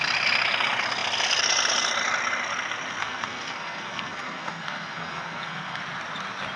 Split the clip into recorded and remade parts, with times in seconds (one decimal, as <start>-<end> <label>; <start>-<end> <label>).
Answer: 0.0-3.0 recorded; 3.0-5.8 remade; 5.8-6.6 recorded